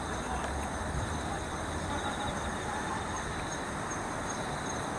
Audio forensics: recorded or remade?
remade